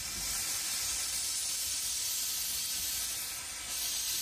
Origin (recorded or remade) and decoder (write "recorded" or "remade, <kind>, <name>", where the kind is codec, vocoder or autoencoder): recorded